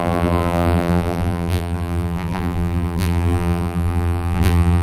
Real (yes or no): no